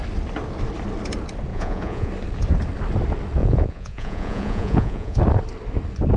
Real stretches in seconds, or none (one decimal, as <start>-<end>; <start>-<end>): 0.0-1.5; 2.1-3.4; 5.2-6.2